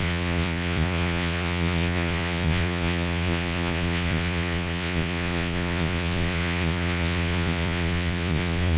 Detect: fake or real fake